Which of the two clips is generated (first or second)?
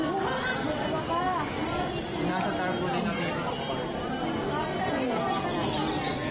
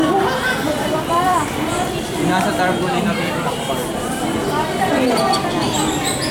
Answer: second